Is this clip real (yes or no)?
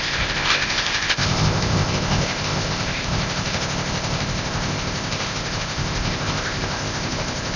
no